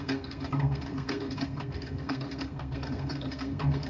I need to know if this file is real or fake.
fake